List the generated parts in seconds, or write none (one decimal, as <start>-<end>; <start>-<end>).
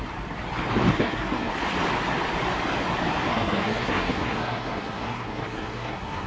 0.9-1.5; 3.3-6.3